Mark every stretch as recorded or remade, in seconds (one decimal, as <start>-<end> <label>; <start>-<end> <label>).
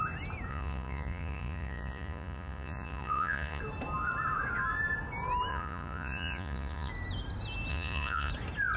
0.0-0.5 recorded; 0.5-3.6 remade; 3.6-5.5 recorded; 5.5-6.9 remade; 6.9-7.7 recorded; 7.7-8.3 remade; 8.3-8.8 recorded